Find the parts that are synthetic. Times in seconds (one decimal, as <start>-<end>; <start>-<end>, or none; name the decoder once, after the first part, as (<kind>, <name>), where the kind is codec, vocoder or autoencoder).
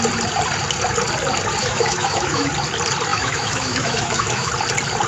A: 1.6-2.5 (autoencoder, DAC-VAE); 3.1-4.5